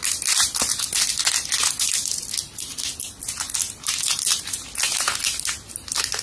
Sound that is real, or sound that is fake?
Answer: real